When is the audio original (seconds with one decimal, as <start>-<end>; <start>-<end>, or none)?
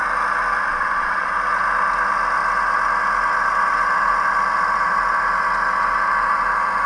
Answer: 0.0-0.7; 1.3-6.9